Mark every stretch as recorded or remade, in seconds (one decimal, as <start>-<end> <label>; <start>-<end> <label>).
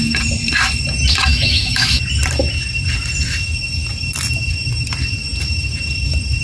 0.0-1.3 recorded; 1.3-2.0 remade; 2.0-6.4 recorded